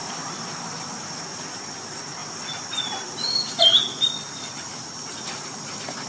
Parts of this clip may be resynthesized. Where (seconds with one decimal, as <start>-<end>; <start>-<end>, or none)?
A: 0.0-0.8; 4.7-5.5